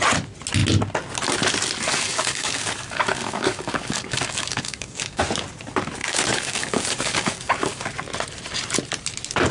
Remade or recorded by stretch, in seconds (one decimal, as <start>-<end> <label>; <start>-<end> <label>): 0.0-1.9 recorded; 1.9-5.2 remade; 5.2-6.0 recorded; 6.0-7.9 remade; 7.9-9.5 recorded